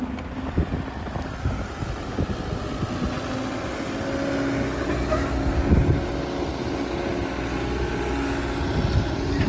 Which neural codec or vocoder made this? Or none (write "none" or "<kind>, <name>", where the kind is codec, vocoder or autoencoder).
none